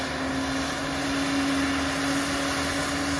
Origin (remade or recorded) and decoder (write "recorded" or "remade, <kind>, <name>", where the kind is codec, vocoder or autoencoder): recorded